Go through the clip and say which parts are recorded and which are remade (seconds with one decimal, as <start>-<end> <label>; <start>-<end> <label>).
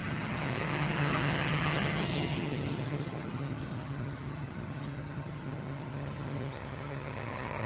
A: 0.0-7.7 remade